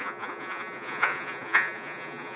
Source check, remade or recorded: remade